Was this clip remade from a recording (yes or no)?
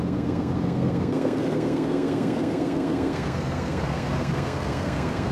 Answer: yes